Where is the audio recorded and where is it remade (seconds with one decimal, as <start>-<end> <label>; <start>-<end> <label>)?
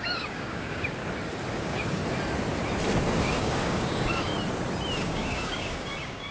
0.0-1.0 remade; 1.0-1.6 recorded; 1.6-2.0 remade; 2.0-3.2 recorded; 3.2-4.3 remade; 4.3-5.0 recorded; 5.0-6.3 remade